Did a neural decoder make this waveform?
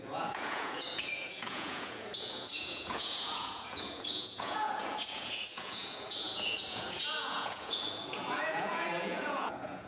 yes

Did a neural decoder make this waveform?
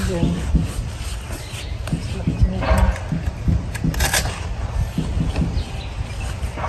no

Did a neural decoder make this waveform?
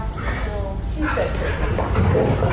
no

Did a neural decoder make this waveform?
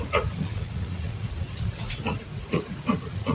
yes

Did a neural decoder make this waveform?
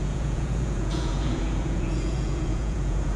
yes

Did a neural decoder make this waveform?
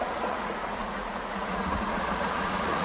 yes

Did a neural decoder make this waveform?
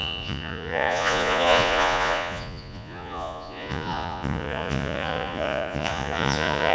yes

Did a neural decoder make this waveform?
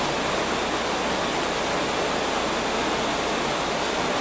no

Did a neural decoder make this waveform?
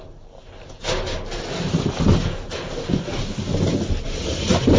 no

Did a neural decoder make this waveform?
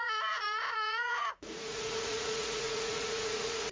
yes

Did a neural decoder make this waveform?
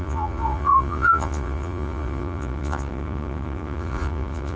yes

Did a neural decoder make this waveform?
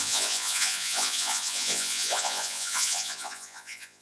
yes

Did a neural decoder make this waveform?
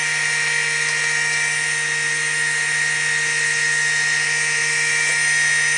no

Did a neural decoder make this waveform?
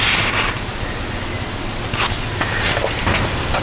no